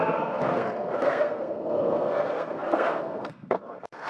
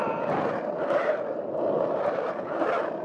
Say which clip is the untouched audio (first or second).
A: second